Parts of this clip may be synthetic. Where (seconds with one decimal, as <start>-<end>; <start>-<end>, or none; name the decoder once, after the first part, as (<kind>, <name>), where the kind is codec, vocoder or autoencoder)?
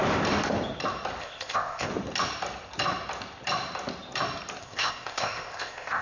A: 1.2-1.9 (codec, ZipCodec); 4.6-6.0